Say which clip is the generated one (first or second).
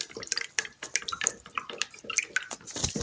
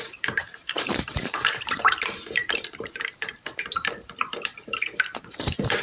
second